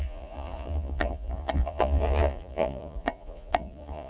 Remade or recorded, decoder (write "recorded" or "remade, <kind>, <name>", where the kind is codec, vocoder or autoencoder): remade, vocoder, Vocos